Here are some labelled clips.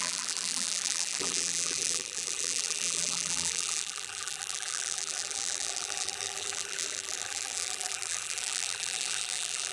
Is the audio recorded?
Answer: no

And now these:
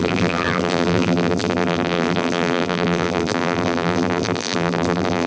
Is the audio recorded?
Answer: no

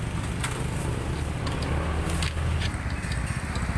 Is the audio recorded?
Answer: yes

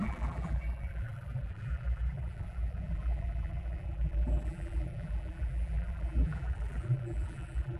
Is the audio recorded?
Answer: no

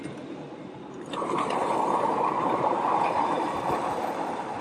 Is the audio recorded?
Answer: no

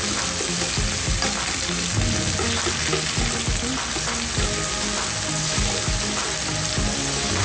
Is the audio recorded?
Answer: yes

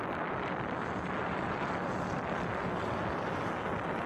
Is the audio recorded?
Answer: no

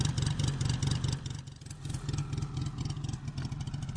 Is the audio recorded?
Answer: yes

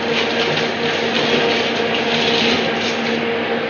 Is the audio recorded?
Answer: yes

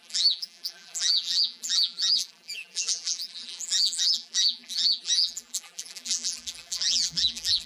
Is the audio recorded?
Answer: no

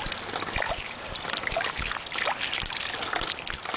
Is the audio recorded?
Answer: yes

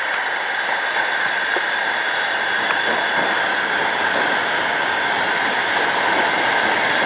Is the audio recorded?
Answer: yes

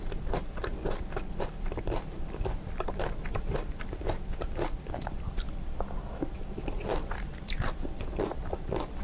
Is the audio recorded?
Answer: no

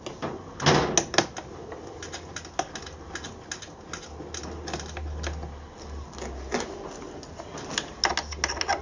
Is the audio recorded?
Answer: yes